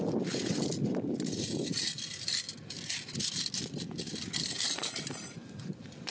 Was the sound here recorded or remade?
recorded